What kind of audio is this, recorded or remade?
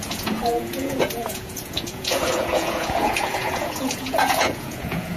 remade